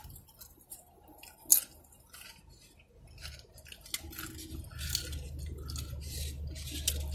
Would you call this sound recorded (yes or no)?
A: yes